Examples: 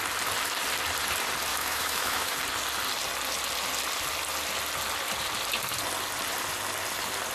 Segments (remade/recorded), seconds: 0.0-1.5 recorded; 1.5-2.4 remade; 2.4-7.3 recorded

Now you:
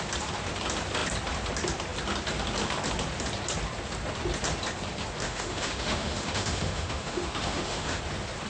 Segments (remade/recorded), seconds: 0.0-5.2 recorded; 5.2-8.0 remade; 8.0-8.5 recorded

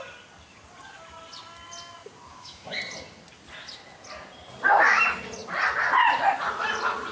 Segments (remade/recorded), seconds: 0.0-2.3 recorded; 2.3-2.8 remade; 2.8-7.1 recorded

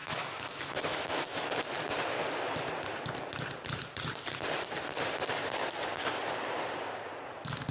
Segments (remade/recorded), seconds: 0.0-1.5 remade; 1.5-7.7 recorded

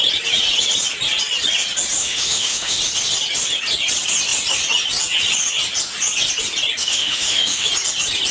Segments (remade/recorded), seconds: 0.0-2.0 recorded; 2.0-2.8 remade; 2.8-6.8 recorded; 6.8-7.7 remade; 7.7-8.3 recorded

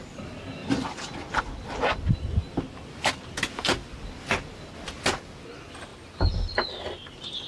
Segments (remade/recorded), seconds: 0.0-7.5 recorded

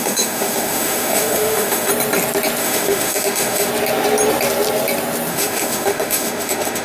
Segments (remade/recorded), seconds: 0.0-1.9 remade; 1.9-2.6 recorded; 2.6-3.7 remade; 3.7-5.3 recorded; 5.3-6.8 remade

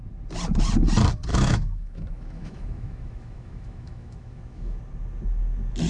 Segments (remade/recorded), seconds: 0.0-1.3 recorded; 1.3-4.8 remade; 4.8-5.9 recorded